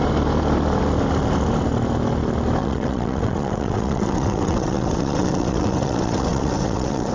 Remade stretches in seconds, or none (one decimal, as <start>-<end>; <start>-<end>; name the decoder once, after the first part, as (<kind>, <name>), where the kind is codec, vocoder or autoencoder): 2.6-7.1 (vocoder, WaveNeXt)